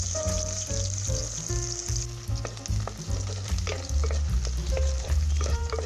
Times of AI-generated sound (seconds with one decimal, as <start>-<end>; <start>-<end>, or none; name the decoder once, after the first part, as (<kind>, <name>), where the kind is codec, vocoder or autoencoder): 0.0-1.2 (vocoder, BigVGAN v2); 4.7-5.9